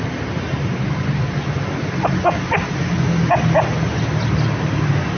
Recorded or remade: recorded